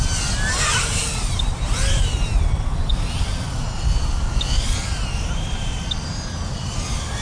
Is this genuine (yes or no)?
yes